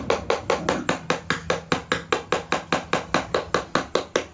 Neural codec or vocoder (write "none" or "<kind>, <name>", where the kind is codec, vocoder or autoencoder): none